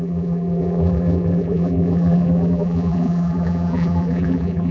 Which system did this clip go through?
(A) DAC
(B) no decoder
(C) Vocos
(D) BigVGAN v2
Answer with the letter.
D